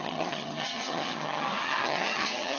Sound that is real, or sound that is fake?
fake